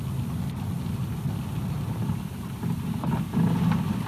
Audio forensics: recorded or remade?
recorded